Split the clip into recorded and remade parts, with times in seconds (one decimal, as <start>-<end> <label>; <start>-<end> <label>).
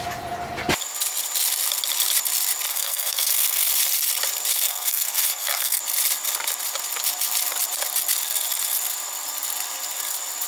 0.0-2.7 recorded; 2.7-3.7 remade; 3.7-4.5 recorded; 4.5-5.8 remade; 5.8-10.5 recorded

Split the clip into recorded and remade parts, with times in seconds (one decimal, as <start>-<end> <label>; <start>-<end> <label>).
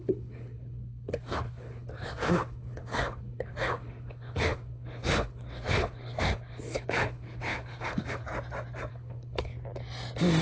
0.0-8.3 remade; 8.3-8.9 recorded; 8.9-9.5 remade; 9.5-10.4 recorded